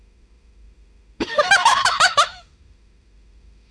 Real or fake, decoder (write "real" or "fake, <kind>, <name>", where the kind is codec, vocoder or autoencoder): fake, autoencoder, DAC-VAE